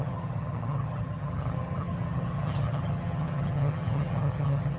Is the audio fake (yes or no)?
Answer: yes